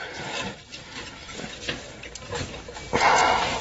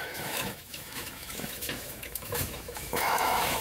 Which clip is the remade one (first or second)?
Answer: second